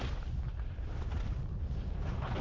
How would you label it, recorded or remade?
recorded